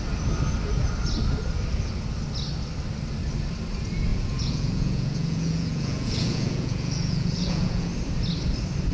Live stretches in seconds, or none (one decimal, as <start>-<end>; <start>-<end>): 0.0-4.1; 7.9-8.9